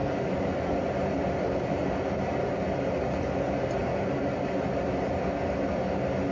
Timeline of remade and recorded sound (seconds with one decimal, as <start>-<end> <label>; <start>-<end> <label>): 0.0-2.9 remade; 2.9-3.8 recorded; 3.8-5.1 remade; 5.1-6.3 recorded